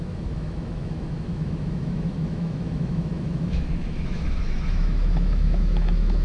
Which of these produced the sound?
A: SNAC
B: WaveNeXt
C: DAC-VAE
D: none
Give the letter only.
C